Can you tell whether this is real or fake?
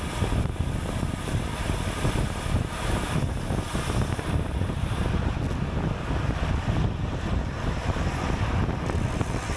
real